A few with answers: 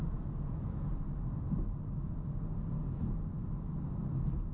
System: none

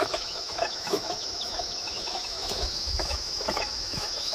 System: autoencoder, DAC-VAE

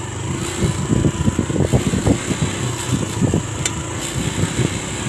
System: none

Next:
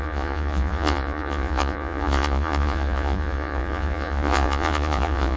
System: vocoder, Vocos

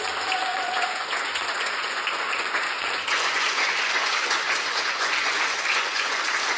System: vocoder, Vocos